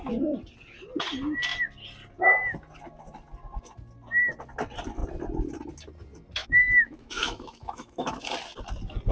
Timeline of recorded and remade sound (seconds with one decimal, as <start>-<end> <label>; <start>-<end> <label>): 0.0-6.4 recorded; 6.4-8.3 remade; 8.3-9.1 recorded